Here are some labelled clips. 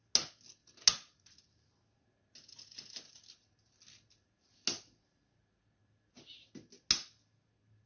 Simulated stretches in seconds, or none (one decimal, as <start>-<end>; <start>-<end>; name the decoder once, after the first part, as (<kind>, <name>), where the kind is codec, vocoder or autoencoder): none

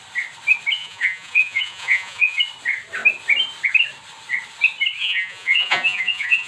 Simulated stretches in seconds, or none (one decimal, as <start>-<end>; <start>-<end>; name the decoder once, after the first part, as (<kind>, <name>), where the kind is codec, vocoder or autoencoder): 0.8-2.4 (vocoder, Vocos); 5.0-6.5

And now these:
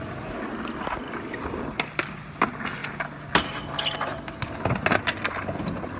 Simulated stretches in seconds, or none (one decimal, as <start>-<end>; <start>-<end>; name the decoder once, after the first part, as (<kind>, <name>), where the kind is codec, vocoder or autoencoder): none

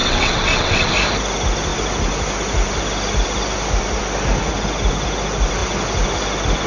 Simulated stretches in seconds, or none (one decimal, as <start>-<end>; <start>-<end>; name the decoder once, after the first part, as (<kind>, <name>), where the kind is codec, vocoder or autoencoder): 0.0-0.9 (vocoder, WaveNeXt)